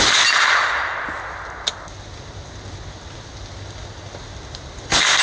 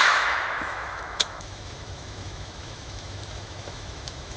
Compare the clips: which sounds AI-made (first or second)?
second